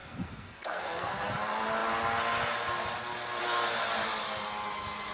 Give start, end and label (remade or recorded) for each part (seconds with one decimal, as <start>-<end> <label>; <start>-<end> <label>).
0.0-1.1 remade; 1.1-5.1 recorded

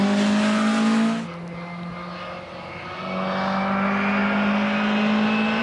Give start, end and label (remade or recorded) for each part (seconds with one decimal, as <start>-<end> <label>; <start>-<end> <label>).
0.0-5.6 recorded

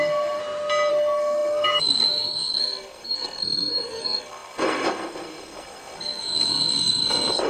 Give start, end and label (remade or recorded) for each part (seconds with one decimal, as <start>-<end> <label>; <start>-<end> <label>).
0.0-0.4 remade; 0.4-0.9 recorded; 0.9-7.5 remade

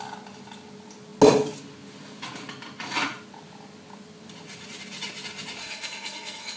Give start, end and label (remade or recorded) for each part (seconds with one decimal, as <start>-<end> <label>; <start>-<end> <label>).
0.0-5.6 recorded; 5.6-6.6 remade

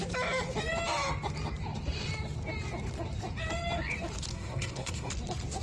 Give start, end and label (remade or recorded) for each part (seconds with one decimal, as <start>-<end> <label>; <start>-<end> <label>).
0.0-4.3 recorded; 4.3-5.1 remade; 5.1-5.6 recorded